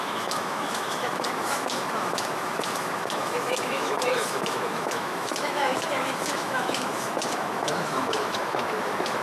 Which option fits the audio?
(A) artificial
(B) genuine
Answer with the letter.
A